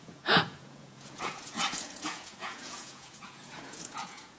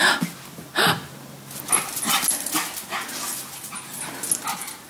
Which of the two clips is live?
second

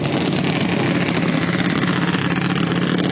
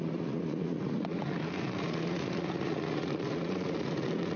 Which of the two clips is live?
first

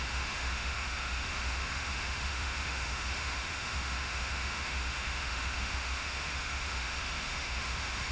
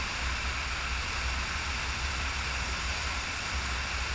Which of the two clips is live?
second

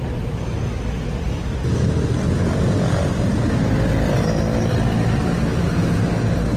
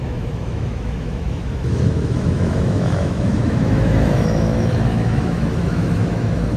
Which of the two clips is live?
first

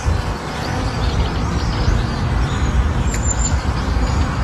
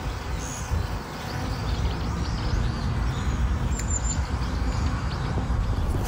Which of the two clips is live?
second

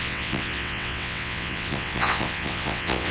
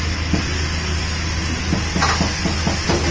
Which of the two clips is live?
second